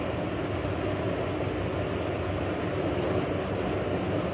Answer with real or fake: real